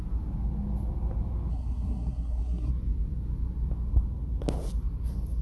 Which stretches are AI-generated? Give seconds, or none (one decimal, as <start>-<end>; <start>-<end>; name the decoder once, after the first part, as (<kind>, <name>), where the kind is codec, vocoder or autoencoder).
1.5-2.7 (codec, SNAC)